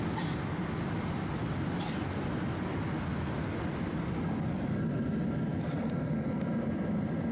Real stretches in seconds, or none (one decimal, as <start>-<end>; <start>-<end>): 0.0-7.3